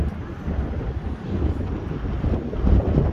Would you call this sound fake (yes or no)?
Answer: no